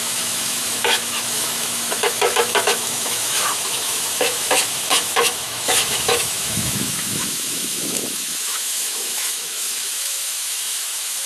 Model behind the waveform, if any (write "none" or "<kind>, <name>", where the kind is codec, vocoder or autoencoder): autoencoder, DAC-VAE